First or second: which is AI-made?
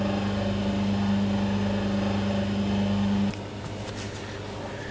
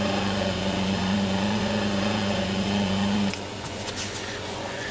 second